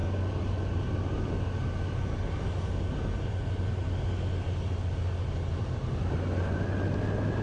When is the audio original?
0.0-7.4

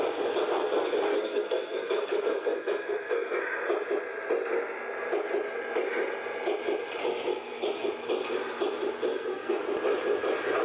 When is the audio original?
0.0-1.1; 3.4-7.0; 7.9-9.1; 9.6-10.6

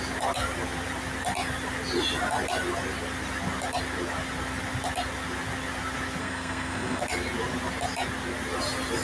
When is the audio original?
0.0-6.2; 7.0-9.0

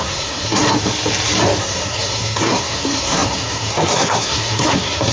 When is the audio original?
0.6-1.6

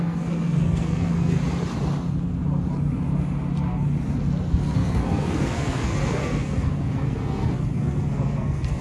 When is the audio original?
1.4-4.5